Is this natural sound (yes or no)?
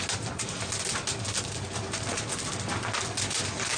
yes